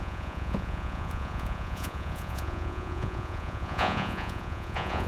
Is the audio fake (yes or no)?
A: yes